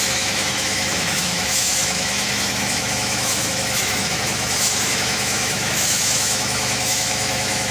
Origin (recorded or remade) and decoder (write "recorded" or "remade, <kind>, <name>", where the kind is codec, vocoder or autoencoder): remade, autoencoder, DAC-VAE